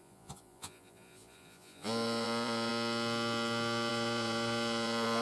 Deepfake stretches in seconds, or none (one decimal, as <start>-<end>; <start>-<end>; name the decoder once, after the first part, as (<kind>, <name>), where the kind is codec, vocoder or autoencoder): 0.0-2.7 (vocoder, Vocos); 3.9-5.2